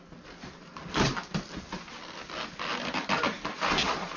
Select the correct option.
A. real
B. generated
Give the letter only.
A